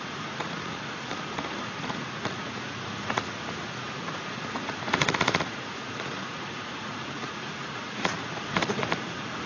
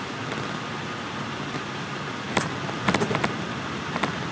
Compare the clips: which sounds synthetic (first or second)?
first